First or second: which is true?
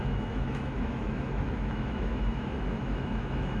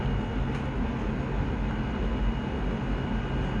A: second